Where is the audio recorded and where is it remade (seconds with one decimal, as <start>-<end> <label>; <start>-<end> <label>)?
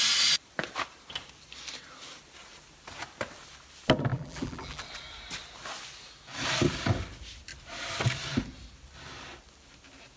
0.0-4.1 recorded; 4.1-4.8 remade; 4.8-10.2 recorded